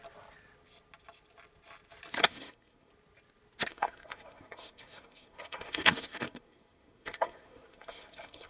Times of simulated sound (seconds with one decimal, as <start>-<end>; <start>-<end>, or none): 2.2-2.9; 3.7-8.5